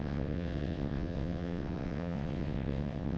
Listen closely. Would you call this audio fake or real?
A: fake